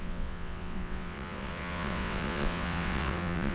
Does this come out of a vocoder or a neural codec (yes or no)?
yes